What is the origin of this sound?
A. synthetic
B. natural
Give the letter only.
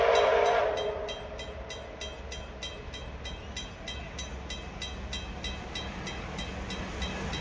B